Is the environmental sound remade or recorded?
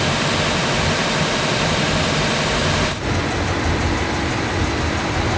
remade